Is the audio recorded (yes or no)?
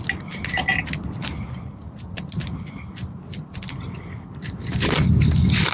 yes